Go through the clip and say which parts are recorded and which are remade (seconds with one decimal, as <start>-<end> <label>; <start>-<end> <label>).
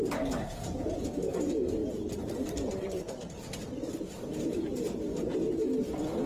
0.0-1.8 recorded; 1.8-5.6 remade; 5.6-6.3 recorded